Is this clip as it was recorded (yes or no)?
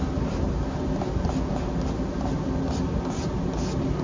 yes